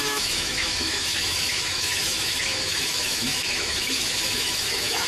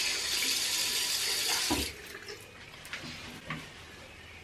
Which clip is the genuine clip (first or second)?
second